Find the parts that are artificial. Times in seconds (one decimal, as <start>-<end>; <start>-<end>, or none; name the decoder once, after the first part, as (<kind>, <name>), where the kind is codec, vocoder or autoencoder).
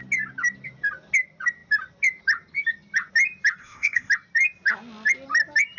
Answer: 3.6-4.1 (codec, ZipCodec)